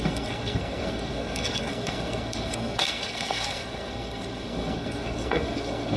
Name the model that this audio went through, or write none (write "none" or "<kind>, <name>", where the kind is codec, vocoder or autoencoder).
codec, SNAC